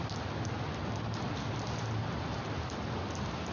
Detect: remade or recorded recorded